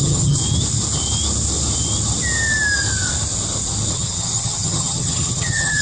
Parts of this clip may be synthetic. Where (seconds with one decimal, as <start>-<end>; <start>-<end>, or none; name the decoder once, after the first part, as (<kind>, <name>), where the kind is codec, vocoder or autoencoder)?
0.0-0.4 (vocoder, HiFi-GAN); 3.9-5.8